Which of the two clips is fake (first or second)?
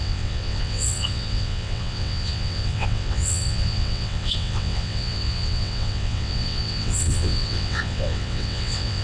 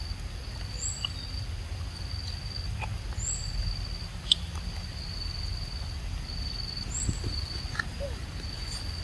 first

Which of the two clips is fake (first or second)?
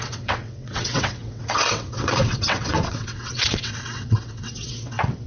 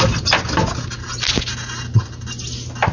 first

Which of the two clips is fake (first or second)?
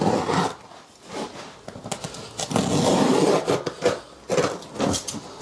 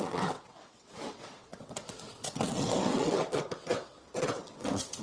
second